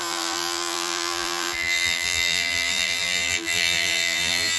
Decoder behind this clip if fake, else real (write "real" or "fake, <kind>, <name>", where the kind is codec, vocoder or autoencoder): fake, vocoder, BigVGAN v2